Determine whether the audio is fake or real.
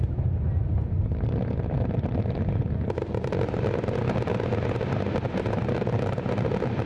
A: real